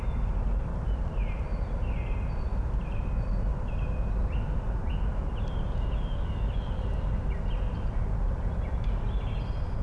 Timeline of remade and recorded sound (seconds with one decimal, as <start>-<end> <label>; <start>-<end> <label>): 0.0-9.8 recorded